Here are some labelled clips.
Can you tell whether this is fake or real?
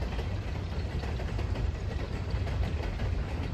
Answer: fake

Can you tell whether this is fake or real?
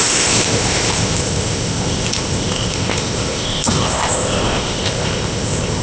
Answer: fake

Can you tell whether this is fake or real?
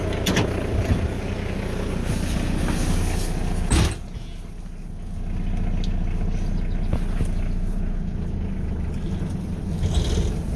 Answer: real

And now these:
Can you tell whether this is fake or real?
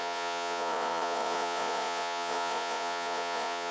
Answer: fake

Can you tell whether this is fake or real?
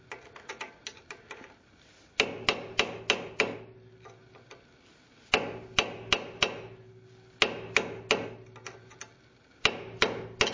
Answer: real